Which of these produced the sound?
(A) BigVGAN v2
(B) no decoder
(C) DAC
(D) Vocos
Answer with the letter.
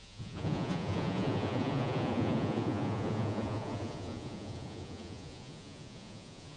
D